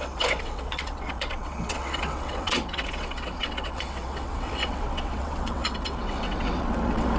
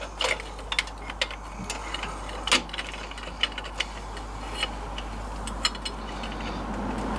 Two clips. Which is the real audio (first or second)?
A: second